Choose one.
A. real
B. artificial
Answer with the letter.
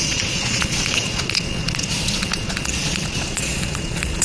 B